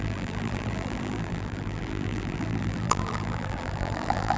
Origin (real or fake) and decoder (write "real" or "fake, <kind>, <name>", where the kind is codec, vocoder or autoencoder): fake, vocoder, BigVGAN v2